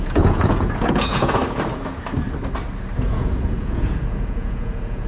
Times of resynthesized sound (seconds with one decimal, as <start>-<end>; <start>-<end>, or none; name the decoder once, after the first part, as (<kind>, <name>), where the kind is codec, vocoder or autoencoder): 0.0-1.4 (vocoder, Vocos); 3.0-5.1

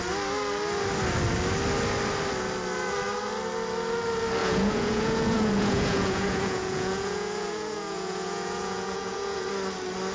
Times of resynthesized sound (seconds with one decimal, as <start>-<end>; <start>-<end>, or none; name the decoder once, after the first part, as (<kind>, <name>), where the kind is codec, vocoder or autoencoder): 4.4-9.5 (vocoder, Vocos)

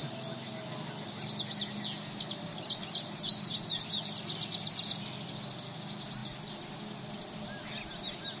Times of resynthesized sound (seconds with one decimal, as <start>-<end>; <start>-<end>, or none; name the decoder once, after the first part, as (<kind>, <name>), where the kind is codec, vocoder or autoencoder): none

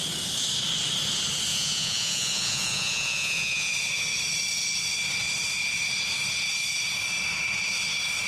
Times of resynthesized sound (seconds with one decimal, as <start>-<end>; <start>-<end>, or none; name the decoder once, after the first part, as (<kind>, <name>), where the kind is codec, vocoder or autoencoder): 1.5-3.7 (vocoder, Vocos)